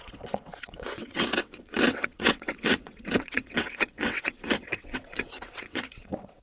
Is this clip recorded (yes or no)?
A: no